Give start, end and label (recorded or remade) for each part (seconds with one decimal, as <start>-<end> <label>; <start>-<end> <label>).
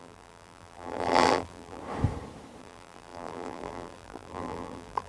0.0-1.8 remade; 1.8-2.6 recorded; 2.6-5.1 remade